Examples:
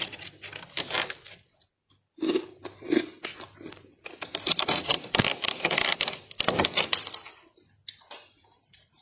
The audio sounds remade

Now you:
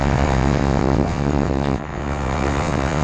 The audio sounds remade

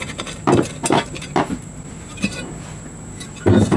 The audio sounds remade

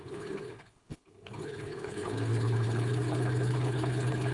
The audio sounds remade